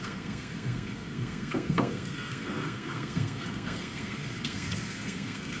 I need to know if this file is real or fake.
fake